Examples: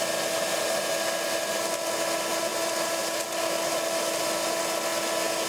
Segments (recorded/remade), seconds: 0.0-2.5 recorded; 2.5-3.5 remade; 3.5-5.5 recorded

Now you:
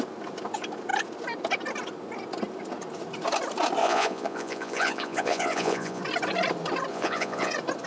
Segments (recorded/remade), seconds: 0.0-3.8 recorded; 3.8-6.0 remade; 6.0-6.9 recorded; 6.9-7.5 remade; 7.5-7.9 recorded